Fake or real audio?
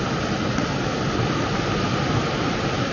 real